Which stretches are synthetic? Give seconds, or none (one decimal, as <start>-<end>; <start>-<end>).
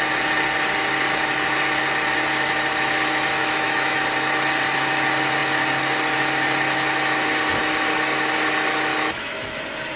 3.4-4.0; 8.9-9.6